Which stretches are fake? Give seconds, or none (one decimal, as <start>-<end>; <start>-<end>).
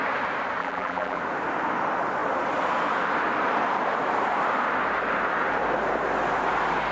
0.6-1.2